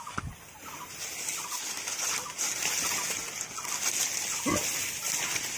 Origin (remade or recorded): recorded